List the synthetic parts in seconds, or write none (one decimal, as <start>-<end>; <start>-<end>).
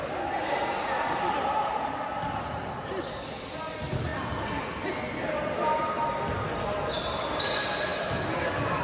none